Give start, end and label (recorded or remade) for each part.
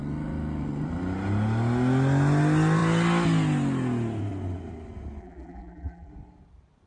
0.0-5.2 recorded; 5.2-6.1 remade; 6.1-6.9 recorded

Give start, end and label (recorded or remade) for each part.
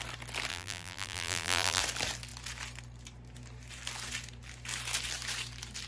0.0-0.5 recorded; 0.5-1.8 remade; 1.8-5.9 recorded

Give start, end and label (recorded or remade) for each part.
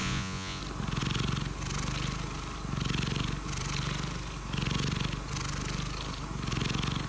0.0-0.6 remade; 0.6-7.1 recorded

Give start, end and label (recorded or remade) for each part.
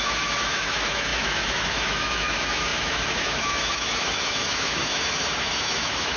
0.0-6.2 remade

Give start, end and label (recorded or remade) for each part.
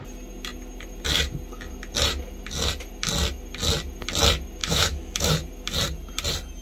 0.0-4.6 recorded; 4.6-5.3 remade; 5.3-6.6 recorded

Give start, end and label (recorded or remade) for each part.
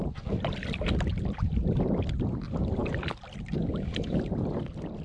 0.0-5.0 recorded